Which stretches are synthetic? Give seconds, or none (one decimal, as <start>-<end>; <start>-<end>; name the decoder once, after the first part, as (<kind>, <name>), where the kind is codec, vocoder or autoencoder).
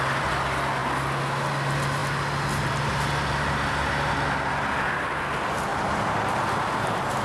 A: 5.7-6.3 (vocoder, BigVGAN v2)